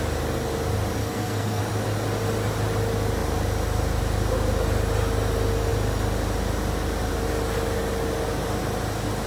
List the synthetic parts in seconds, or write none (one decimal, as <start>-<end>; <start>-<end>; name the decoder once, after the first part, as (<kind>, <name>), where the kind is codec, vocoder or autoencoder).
1.0-1.6 (codec, SNAC)